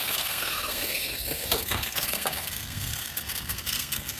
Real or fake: fake